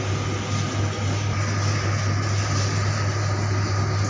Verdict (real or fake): real